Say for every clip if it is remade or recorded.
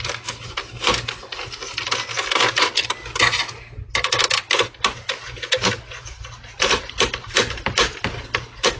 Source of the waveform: recorded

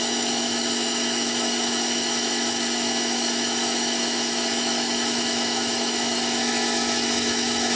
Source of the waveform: remade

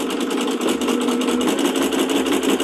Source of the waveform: remade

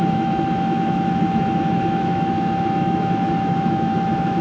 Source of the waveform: remade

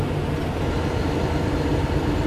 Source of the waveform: recorded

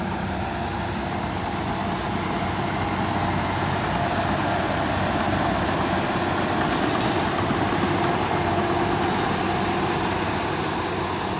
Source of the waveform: recorded